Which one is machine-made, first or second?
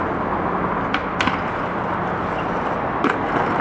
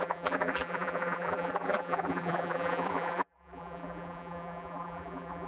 second